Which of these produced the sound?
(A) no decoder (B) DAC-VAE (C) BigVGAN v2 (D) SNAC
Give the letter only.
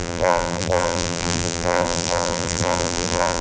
C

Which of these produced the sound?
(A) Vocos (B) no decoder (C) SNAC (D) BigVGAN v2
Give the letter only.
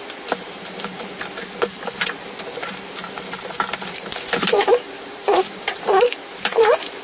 D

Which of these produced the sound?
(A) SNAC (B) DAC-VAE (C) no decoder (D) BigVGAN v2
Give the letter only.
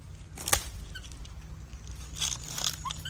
C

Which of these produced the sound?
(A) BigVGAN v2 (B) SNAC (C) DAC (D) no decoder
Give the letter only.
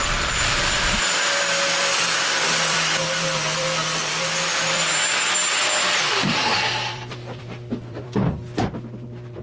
A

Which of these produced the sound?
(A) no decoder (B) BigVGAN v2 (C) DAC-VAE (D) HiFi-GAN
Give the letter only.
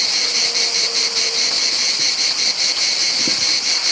B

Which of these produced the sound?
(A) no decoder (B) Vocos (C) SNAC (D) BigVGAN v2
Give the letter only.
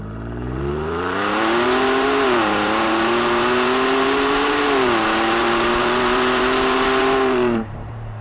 D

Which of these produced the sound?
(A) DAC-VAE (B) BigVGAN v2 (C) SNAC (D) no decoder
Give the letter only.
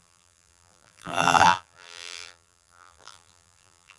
B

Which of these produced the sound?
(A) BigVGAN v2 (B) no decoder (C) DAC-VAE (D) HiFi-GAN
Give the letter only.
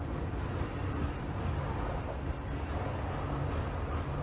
B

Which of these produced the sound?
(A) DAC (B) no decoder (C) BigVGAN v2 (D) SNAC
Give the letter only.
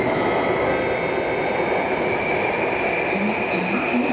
B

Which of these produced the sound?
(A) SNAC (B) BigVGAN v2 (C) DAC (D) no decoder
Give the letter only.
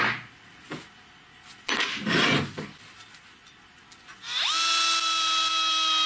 D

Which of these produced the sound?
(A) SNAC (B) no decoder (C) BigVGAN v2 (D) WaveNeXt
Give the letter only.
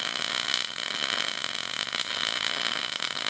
B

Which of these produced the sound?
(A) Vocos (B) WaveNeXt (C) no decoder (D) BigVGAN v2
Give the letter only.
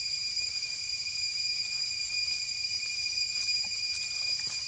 D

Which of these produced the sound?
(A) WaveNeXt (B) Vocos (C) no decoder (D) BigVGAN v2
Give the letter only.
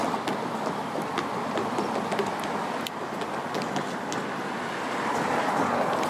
C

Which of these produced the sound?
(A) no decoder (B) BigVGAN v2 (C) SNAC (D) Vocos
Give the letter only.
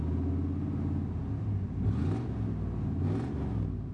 A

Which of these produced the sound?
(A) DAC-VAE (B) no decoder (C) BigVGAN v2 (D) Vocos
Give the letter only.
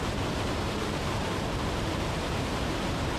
C